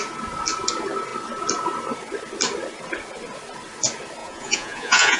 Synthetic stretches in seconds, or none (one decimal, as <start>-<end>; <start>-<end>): 4.2-5.2